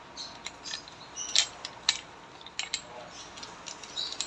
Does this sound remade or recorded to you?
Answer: recorded